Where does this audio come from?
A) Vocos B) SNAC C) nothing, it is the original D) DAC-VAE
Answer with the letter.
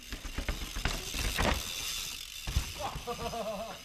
C